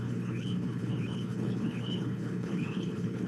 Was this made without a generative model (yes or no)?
no